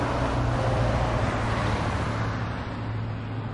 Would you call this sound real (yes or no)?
yes